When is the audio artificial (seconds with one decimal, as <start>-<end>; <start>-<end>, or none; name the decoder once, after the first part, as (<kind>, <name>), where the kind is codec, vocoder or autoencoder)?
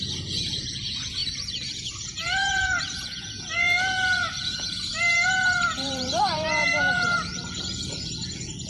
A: 0.0-8.7 (vocoder, Vocos)